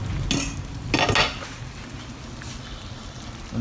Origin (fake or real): real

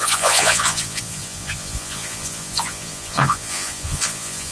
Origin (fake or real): fake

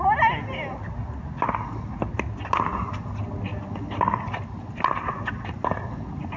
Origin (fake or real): real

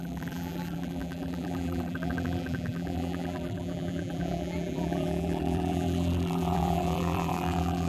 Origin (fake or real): fake